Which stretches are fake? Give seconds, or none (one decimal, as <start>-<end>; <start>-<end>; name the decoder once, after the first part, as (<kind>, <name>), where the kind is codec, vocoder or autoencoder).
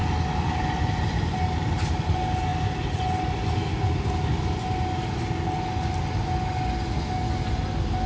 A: none